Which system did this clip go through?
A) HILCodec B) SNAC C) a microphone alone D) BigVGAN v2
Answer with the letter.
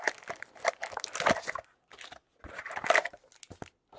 C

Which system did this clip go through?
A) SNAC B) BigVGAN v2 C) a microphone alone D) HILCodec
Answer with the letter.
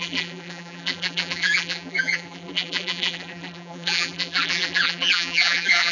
B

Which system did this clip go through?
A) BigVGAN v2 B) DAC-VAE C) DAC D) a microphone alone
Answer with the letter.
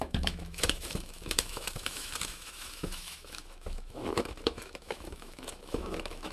B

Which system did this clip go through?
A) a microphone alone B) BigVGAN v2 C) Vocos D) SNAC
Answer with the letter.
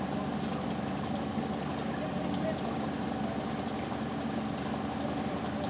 A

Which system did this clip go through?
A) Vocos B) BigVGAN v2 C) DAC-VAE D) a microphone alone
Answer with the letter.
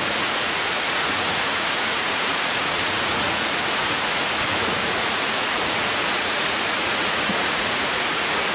A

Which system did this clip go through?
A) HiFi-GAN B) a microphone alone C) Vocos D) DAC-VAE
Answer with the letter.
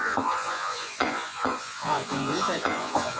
C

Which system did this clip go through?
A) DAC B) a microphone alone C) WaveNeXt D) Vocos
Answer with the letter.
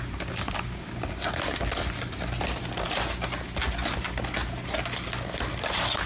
B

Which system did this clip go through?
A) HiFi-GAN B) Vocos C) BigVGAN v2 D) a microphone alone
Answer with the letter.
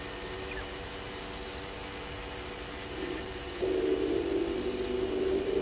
D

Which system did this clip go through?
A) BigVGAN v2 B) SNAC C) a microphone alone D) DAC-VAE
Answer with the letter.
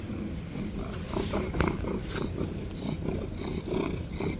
C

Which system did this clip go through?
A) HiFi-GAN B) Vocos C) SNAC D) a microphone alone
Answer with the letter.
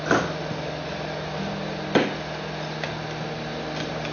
D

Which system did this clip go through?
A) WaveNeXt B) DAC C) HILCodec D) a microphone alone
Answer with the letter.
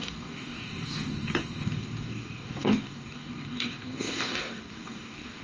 B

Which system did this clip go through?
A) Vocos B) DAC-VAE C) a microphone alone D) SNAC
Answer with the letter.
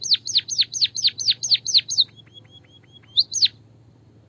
C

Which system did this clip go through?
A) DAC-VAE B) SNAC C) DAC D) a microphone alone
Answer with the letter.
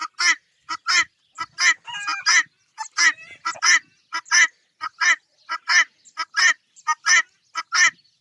D